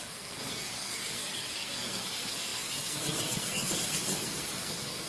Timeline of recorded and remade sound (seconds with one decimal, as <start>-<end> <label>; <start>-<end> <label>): 0.0-5.1 remade

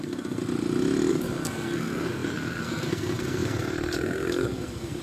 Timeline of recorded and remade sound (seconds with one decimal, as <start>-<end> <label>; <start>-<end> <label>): 0.0-0.4 remade; 0.4-1.1 recorded; 1.1-5.0 remade